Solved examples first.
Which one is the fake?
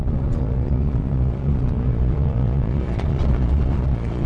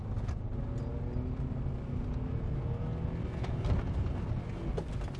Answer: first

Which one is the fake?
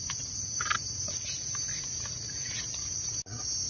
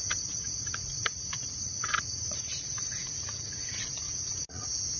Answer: second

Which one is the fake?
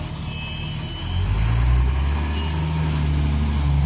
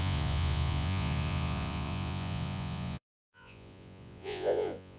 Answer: second